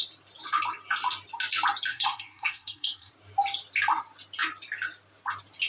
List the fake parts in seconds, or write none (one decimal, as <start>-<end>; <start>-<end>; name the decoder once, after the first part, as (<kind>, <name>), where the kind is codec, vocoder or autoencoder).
1.9-3.1 (codec, SNAC)